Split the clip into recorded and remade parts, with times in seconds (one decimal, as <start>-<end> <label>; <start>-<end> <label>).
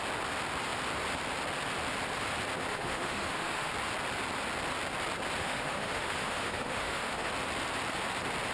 0.0-2.7 recorded; 2.7-3.7 remade; 3.7-5.4 recorded; 5.4-7.3 remade; 7.3-8.5 recorded